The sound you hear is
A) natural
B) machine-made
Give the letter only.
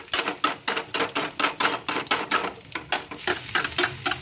A